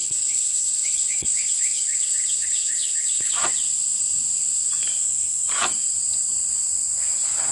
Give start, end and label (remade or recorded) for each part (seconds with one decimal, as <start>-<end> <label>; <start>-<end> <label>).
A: 0.0-3.3 remade; 3.3-7.5 recorded